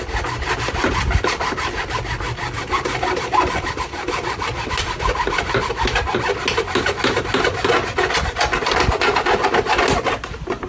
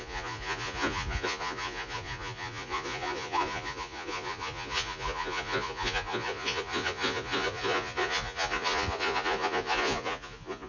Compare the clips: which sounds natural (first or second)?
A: first